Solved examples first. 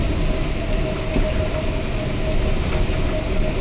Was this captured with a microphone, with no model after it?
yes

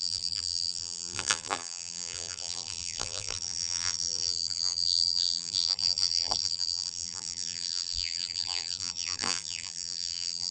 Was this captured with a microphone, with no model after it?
no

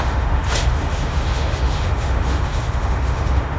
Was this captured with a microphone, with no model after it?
no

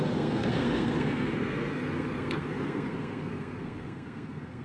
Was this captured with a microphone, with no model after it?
no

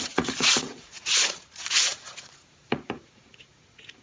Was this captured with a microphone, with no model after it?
no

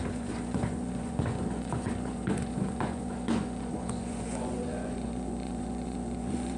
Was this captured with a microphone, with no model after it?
no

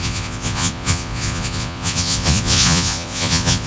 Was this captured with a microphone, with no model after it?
no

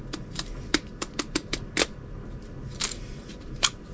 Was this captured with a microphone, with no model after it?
yes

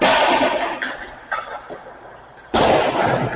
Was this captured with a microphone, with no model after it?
yes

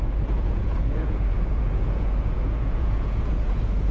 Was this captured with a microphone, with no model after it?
no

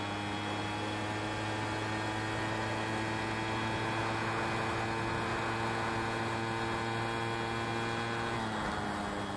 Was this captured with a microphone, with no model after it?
yes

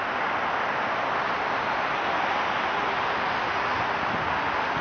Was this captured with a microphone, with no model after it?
yes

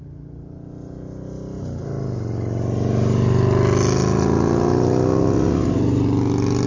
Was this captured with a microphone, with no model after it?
yes